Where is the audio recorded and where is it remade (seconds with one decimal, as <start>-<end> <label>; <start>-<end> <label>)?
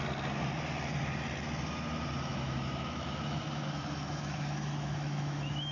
0.0-2.3 recorded; 2.3-5.7 remade